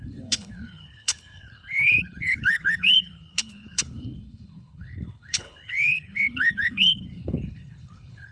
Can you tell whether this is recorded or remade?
remade